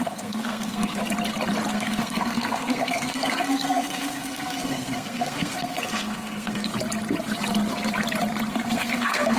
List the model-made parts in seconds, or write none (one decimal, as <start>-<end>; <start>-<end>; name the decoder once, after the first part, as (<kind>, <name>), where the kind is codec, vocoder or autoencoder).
0.0-1.0 (codec, SNAC); 1.7-6.7; 8.5-9.4